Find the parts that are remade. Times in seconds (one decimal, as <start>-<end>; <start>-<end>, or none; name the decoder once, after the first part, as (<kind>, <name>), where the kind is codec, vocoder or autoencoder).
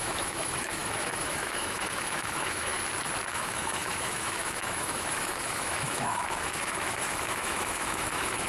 0.0-2.7 (autoencoder, DAC-VAE); 3.3-8.5